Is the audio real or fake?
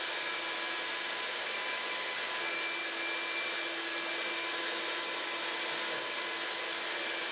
real